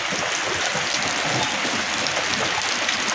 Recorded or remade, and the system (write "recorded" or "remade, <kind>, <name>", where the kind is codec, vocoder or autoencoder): recorded